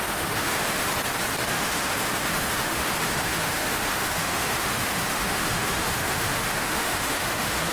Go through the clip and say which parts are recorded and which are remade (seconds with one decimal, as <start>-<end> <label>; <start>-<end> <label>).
0.0-0.9 remade; 0.9-1.5 recorded; 1.5-7.7 remade